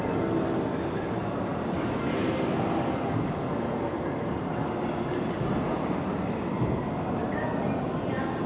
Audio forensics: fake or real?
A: real